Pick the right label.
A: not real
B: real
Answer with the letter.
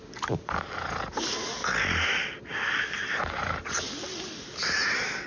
B